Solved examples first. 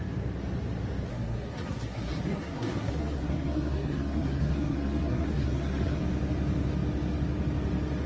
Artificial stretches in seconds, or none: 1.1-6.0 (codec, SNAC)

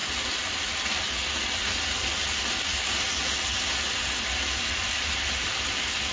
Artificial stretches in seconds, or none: none

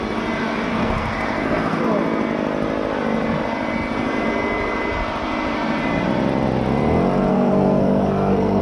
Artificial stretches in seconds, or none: 0.7-1.8 (codec, SNAC); 7.3-8.6

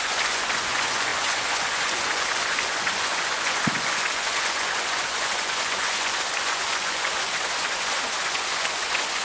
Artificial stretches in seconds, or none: 0.0-9.2 (vocoder, Vocos)

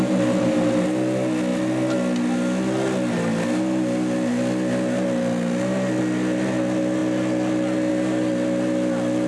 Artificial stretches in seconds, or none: none

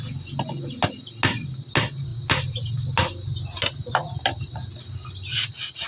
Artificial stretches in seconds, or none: none